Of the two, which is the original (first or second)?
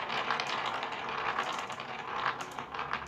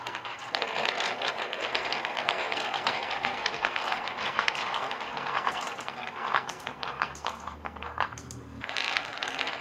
first